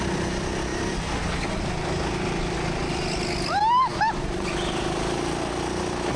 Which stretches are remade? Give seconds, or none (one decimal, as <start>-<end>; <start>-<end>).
none